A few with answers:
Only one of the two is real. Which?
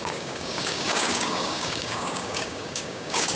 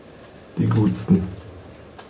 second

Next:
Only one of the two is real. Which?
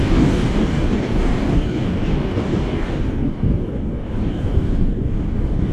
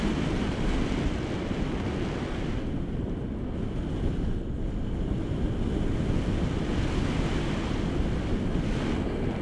second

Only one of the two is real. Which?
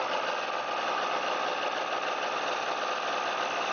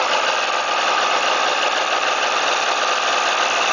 first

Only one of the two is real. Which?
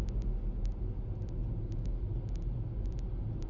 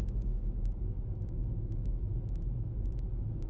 first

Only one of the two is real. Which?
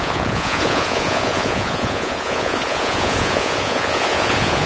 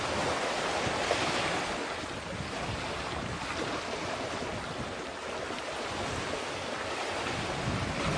second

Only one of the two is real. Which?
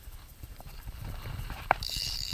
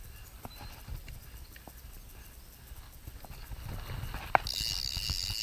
second